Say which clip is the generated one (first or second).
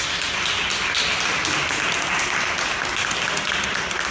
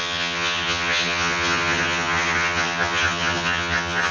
second